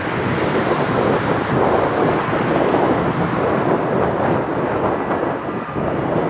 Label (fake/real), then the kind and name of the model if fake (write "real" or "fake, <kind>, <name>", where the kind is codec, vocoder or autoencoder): real